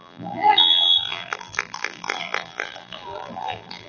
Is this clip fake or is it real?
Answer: fake